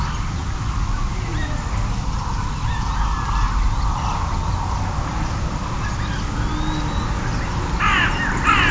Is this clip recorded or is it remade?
recorded